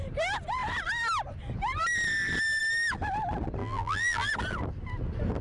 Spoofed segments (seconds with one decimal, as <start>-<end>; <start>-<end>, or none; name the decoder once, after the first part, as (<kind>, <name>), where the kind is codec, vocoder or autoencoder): 3.6-4.3 (vocoder, BigVGAN v2)